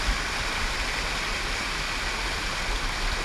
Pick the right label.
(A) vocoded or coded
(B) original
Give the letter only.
B